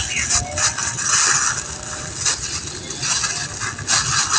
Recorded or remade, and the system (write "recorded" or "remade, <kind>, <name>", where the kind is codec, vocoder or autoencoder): recorded